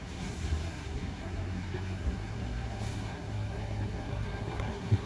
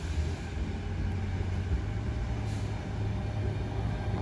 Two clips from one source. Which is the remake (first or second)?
first